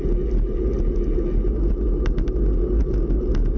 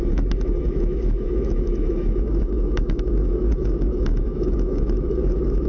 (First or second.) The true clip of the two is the first